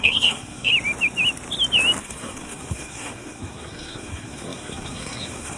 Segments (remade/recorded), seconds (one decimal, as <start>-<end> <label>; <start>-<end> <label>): 0.0-0.7 remade; 0.7-2.0 recorded; 2.0-5.6 remade